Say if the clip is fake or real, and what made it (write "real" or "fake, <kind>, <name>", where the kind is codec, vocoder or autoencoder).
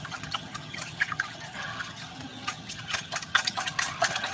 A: fake, vocoder, HiFi-GAN